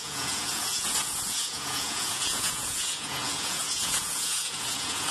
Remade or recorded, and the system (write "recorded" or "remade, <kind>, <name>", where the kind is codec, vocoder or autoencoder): remade, vocoder, Vocos